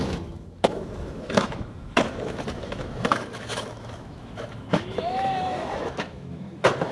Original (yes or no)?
no